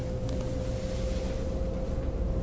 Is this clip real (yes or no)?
yes